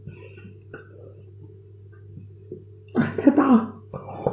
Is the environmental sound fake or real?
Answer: real